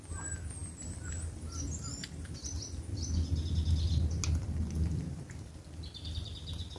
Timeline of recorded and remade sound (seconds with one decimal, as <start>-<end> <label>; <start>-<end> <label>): 0.0-6.8 recorded